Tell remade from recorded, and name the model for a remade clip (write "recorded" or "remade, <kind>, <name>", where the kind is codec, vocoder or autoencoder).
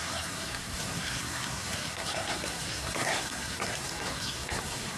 remade, codec, SNAC